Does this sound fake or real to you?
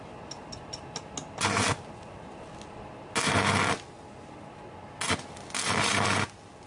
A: real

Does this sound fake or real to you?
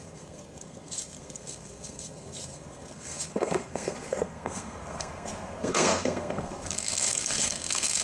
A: fake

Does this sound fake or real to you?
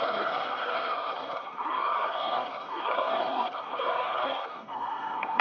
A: fake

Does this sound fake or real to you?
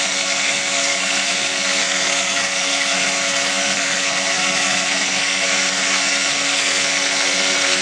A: fake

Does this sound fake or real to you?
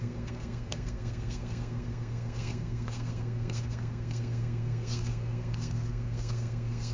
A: fake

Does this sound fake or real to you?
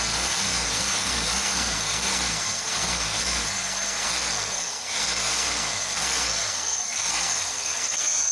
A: fake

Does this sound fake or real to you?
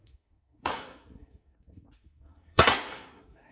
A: fake